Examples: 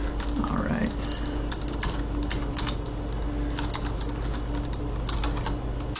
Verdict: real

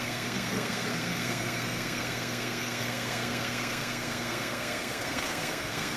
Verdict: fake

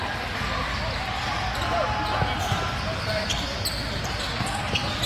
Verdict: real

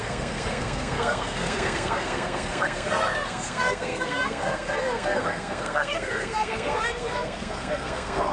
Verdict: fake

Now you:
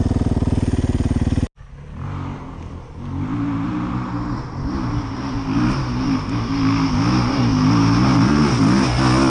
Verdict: real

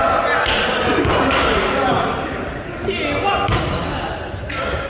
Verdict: real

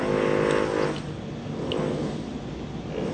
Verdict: real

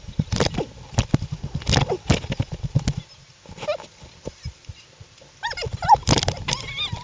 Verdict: real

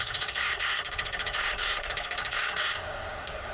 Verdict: fake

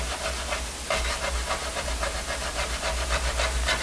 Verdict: real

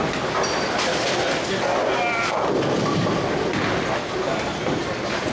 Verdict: real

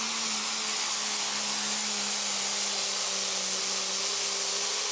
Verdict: real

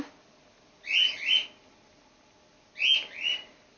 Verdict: real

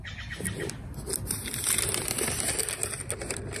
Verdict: real